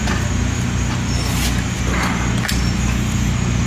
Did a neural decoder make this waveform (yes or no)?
no